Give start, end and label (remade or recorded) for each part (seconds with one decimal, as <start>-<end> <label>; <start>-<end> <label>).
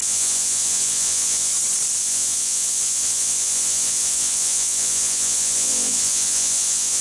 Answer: 0.0-1.5 remade; 1.5-2.0 recorded; 2.0-7.0 remade